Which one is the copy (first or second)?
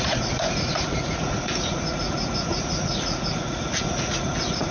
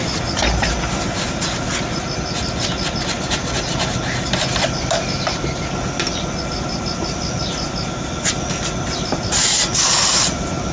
first